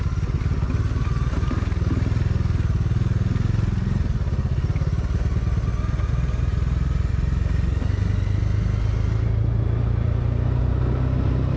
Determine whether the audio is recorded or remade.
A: recorded